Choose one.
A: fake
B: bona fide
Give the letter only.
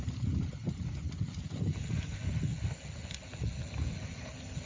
B